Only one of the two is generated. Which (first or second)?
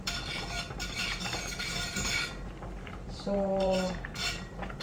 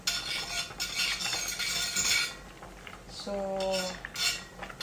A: first